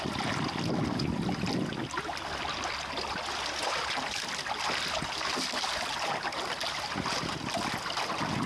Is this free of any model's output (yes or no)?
yes